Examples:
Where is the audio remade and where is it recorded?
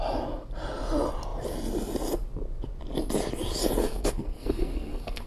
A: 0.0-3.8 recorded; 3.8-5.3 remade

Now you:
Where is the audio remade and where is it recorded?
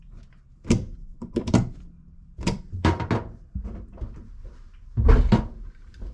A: 0.0-1.0 recorded; 1.0-3.1 remade; 3.1-6.1 recorded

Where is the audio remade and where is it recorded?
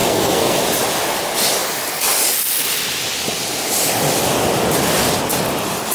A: 0.0-0.6 remade; 0.6-5.9 recorded